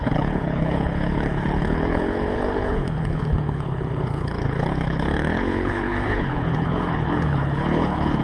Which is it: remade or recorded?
remade